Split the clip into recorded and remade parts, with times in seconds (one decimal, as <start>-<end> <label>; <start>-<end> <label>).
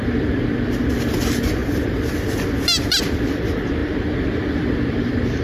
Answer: 0.0-1.6 remade; 1.6-3.0 recorded; 3.0-5.4 remade